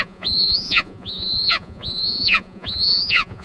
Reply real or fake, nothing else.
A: fake